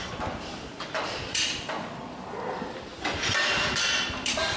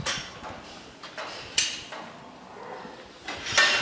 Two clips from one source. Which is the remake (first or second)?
first